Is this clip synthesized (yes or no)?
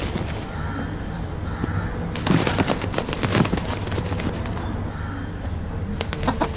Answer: no